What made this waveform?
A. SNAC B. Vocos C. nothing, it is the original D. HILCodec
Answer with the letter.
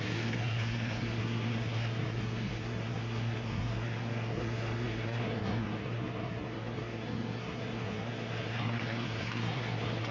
A